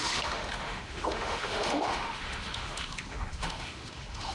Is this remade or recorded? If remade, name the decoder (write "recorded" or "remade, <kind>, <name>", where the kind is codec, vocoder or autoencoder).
remade, autoencoder, DAC-VAE